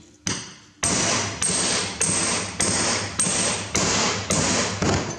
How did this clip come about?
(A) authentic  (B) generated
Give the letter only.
A